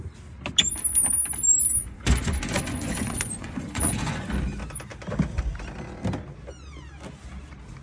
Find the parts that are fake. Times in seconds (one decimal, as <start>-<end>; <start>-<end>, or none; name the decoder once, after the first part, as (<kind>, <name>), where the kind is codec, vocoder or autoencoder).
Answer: 1.8-4.3 (vocoder, Vocos)